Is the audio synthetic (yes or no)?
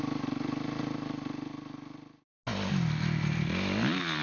no